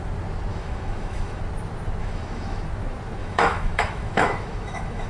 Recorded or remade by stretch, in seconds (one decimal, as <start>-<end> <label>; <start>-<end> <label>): 0.0-0.5 recorded; 0.5-1.4 remade; 1.4-2.0 recorded; 2.0-2.6 remade; 2.6-3.2 recorded; 3.2-5.1 remade